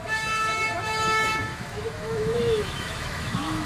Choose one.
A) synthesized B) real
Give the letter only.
A